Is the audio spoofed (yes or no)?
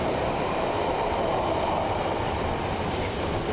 no